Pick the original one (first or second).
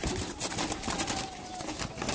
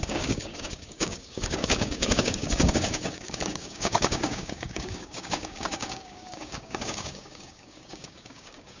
first